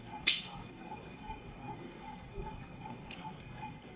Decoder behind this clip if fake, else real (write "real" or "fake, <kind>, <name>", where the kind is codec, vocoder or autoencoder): fake, codec, SNAC